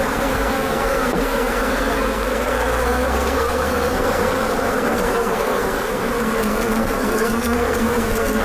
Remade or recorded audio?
remade